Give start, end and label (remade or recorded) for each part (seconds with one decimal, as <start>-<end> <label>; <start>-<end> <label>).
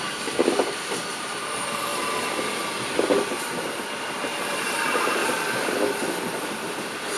0.0-7.2 recorded